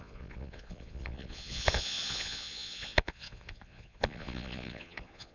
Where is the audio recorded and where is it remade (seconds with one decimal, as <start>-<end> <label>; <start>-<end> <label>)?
0.0-5.3 remade